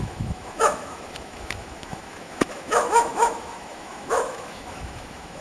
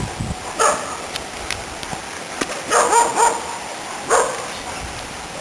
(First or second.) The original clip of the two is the second